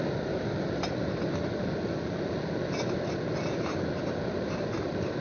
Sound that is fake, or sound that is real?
real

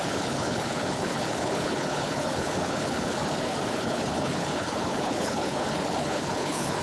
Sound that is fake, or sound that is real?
fake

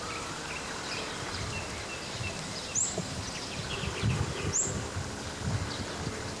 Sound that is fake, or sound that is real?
real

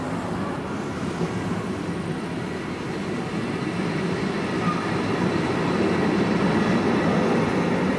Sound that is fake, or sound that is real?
real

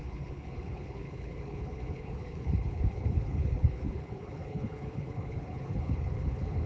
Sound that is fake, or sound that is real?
fake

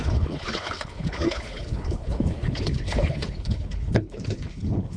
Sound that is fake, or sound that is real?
fake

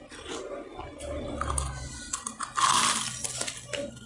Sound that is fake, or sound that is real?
real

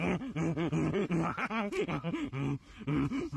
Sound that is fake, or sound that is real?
real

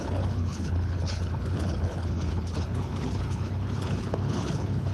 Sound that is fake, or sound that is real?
fake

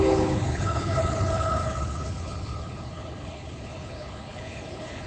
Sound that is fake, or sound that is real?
fake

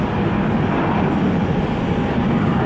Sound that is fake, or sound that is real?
real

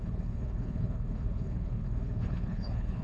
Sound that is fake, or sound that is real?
fake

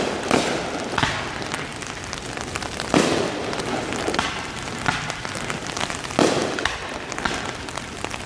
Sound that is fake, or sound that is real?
real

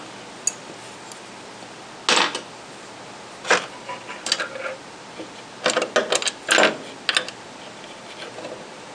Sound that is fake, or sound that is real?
real